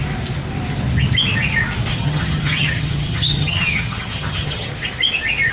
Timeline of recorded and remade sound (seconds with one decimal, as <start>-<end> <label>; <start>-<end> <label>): 0.0-1.9 recorded; 1.9-4.7 remade; 4.7-5.5 recorded